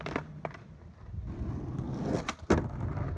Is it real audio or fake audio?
real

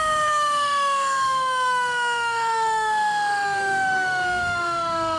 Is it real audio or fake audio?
fake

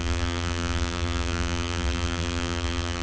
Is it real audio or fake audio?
fake